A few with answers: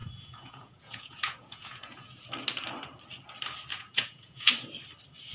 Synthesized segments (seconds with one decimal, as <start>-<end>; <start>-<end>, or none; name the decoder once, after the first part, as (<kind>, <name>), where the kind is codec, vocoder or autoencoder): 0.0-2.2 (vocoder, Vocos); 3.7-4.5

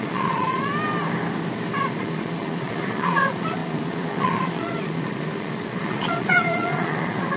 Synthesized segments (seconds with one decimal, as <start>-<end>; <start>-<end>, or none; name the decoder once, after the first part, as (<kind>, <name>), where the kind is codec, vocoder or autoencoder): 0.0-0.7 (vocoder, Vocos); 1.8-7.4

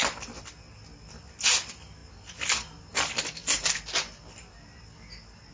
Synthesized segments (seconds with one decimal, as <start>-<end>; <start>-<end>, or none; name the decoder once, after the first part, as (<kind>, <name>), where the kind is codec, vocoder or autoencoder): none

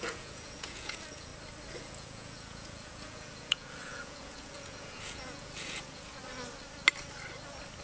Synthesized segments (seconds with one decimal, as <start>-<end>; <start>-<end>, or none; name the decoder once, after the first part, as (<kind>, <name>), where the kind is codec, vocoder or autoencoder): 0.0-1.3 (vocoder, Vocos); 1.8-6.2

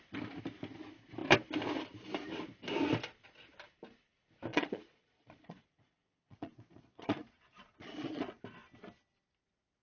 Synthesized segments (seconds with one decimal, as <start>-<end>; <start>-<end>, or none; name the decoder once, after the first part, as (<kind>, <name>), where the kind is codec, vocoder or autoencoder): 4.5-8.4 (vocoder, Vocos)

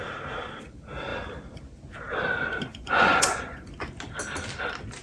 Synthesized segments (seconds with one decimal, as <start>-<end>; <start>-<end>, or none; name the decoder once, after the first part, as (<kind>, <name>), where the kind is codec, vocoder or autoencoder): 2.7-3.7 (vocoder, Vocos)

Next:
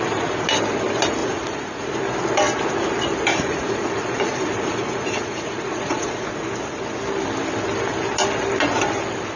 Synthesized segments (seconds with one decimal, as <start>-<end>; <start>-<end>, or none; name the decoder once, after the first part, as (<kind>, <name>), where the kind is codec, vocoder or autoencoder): 1.2-1.9 (vocoder, Vocos); 3.3-6.3